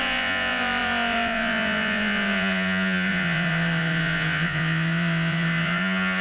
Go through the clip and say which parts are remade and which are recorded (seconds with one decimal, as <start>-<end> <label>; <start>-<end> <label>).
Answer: 0.0-6.2 remade